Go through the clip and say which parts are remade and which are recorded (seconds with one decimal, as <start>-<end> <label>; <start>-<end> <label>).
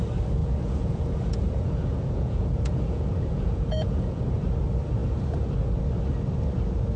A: 0.0-0.4 recorded; 0.4-4.2 remade; 4.2-7.0 recorded